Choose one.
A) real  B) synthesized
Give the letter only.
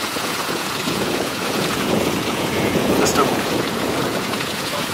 B